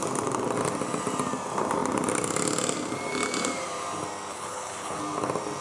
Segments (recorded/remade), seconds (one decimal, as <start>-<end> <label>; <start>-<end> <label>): 0.0-4.3 recorded; 4.3-5.0 remade; 5.0-5.6 recorded